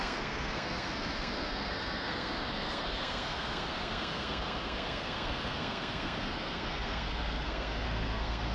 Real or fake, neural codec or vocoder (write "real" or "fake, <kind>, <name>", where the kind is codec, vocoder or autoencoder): fake, codec, SNAC